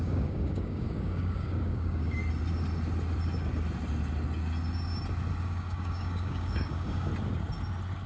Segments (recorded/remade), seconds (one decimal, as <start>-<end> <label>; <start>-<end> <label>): 0.0-2.2 remade; 2.2-5.4 recorded; 5.4-7.1 remade; 7.1-8.1 recorded